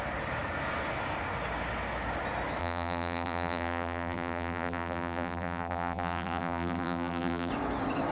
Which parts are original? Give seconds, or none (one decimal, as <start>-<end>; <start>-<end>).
0.0-2.6; 7.5-8.1